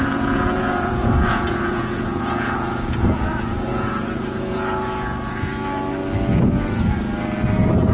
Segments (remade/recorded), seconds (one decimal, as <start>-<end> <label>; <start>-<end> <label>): 0.0-5.5 remade; 5.5-7.9 recorded

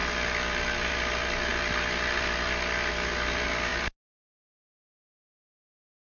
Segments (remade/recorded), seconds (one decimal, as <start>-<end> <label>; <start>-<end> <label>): 0.0-0.9 remade; 0.9-1.5 recorded; 1.5-2.9 remade; 2.9-6.1 recorded